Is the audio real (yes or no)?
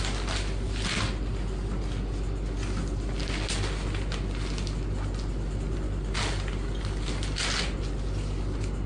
yes